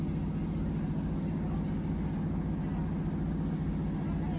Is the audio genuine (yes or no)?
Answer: yes